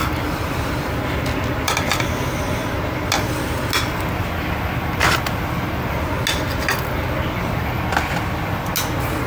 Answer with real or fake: real